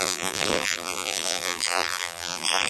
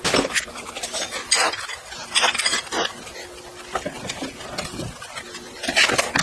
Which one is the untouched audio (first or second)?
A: second